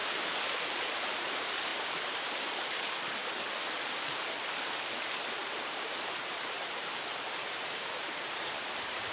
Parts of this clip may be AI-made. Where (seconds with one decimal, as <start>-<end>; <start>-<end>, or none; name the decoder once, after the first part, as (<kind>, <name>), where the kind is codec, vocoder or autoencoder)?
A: 1.0-9.1 (vocoder, BigVGAN v2)